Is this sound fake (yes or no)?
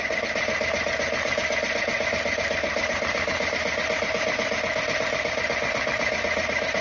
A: no